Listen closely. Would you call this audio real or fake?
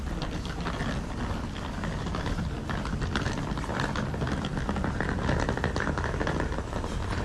real